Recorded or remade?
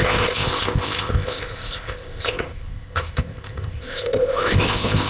remade